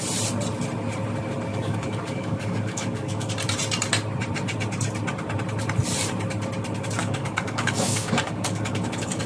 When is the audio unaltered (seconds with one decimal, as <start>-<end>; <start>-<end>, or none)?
0.0-1.5; 3.3-7.0